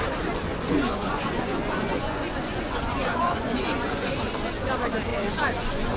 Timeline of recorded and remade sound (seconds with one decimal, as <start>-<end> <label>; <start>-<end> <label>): 0.0-0.5 recorded; 0.5-4.1 remade; 4.1-5.1 recorded; 5.1-6.0 remade